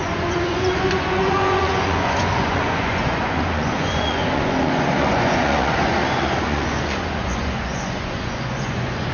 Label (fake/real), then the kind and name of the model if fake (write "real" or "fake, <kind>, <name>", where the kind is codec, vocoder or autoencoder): fake, vocoder, Vocos